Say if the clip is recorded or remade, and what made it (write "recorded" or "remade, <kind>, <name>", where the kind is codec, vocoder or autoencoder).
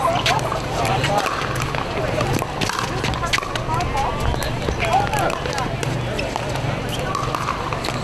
recorded